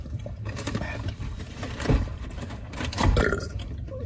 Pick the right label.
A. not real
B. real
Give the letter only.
A